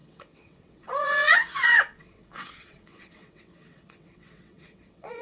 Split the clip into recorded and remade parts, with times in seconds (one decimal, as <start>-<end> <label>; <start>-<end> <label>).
0.0-5.2 remade